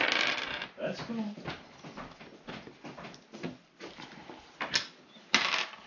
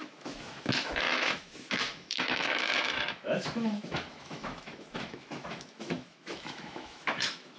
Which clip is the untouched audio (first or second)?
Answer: first